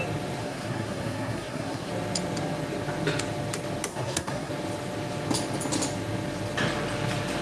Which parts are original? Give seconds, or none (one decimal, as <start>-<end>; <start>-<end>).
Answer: 0.0-0.4; 1.9-3.9; 4.5-7.4